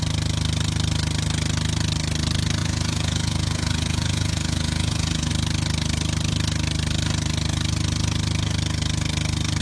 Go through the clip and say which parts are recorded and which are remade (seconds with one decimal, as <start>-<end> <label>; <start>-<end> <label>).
0.0-2.6 recorded; 2.6-5.3 remade; 5.3-9.6 recorded